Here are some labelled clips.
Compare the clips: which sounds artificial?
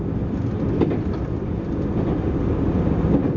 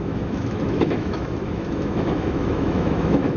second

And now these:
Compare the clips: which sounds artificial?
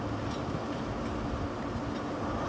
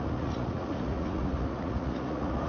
second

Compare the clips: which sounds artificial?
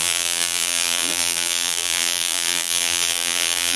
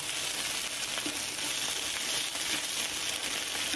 first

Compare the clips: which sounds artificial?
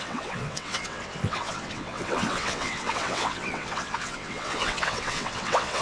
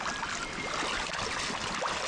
first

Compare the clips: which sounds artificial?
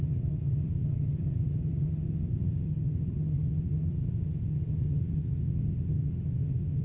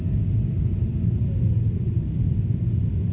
first